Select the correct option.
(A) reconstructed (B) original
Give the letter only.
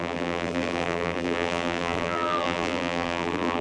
A